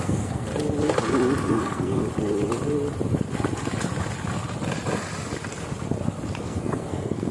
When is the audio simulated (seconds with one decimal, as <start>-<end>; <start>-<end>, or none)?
0.0-0.5; 1.5-2.0; 6.4-7.3